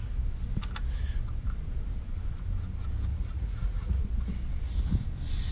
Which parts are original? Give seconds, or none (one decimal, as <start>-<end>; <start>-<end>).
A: 0.0-3.1; 4.0-5.5